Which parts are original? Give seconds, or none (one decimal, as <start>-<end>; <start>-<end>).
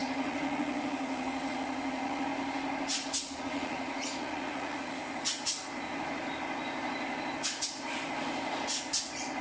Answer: 2.3-3.4; 5.0-9.4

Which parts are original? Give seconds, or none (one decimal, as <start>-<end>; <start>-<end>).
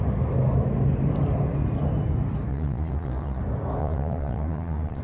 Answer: 0.0-2.5; 3.4-3.8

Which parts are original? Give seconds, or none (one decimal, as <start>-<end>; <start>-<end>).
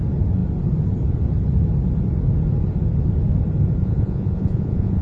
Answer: 0.0-3.8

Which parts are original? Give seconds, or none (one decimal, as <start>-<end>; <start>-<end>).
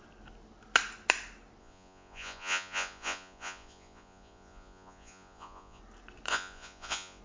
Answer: 0.0-1.6; 5.8-6.3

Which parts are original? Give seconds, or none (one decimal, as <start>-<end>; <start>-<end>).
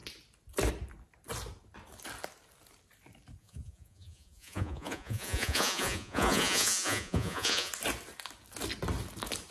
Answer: 0.0-3.4; 7.7-9.5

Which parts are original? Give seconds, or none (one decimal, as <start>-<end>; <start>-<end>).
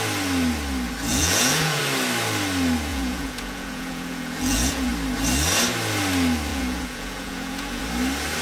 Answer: 0.0-1.1; 1.8-2.9; 4.9-6.5; 7.8-8.4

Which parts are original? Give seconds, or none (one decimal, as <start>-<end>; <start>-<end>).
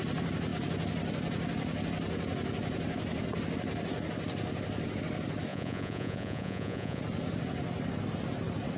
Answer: 0.0-5.5; 7.0-8.8